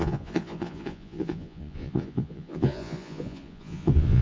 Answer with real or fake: fake